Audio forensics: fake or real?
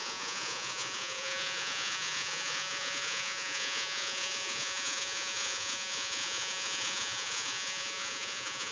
fake